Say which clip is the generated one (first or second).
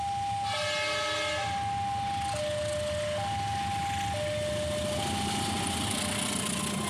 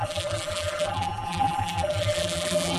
second